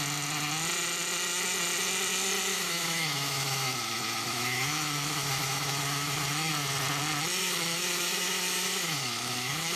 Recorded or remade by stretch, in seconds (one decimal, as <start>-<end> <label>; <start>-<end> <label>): 0.0-2.5 recorded; 2.5-6.5 remade; 6.5-7.4 recorded; 7.4-9.8 remade